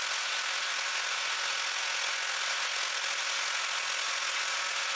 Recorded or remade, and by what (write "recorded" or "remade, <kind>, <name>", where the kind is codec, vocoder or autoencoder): recorded